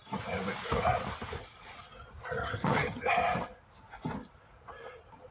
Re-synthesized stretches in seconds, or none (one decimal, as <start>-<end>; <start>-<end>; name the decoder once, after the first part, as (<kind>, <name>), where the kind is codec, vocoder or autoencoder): 2.4-3.1 (vocoder, HiFi-GAN)